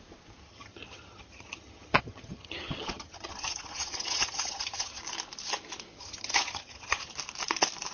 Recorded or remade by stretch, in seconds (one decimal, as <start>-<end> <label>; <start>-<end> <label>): 0.0-0.4 recorded; 0.4-5.0 remade; 5.0-5.9 recorded; 5.9-7.1 remade; 7.1-7.9 recorded